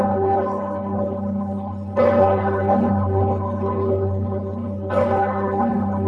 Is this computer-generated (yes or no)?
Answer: yes